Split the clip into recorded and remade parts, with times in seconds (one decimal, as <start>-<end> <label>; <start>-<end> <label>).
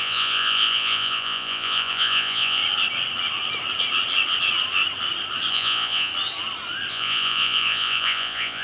0.0-2.6 remade; 2.6-5.5 recorded; 5.5-6.1 remade; 6.1-6.9 recorded; 6.9-8.6 remade